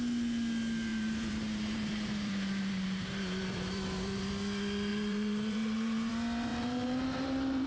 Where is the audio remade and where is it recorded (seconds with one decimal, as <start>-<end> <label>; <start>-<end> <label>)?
0.0-0.9 recorded; 0.9-4.3 remade; 4.3-4.9 recorded; 4.9-6.1 remade; 6.1-6.5 recorded; 6.5-7.7 remade

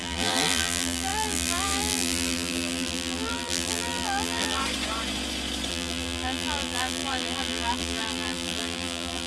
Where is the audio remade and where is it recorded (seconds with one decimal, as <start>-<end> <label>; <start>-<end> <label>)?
0.0-4.6 remade; 4.6-5.7 recorded; 5.7-9.3 remade

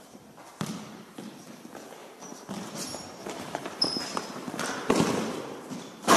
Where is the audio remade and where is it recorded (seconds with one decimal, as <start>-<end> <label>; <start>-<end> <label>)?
0.0-2.0 recorded; 2.0-2.5 remade; 2.5-3.2 recorded; 3.2-4.9 remade; 4.9-6.2 recorded

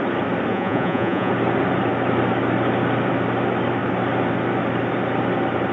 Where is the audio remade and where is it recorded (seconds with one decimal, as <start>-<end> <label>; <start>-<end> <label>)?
0.0-0.5 recorded; 0.5-1.3 remade; 1.3-5.7 recorded

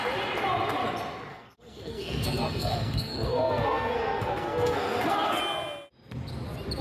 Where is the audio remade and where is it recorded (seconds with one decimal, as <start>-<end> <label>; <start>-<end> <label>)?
0.0-1.3 recorded; 1.3-5.4 remade; 5.4-6.8 recorded

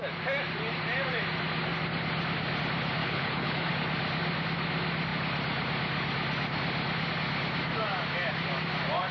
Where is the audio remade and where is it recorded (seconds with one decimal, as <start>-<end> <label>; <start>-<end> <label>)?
0.0-3.0 recorded; 3.0-3.7 remade; 3.7-9.1 recorded